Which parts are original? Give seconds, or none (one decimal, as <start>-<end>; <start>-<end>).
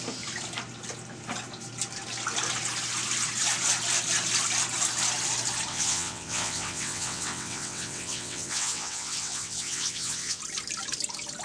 0.0-5.7; 10.4-11.4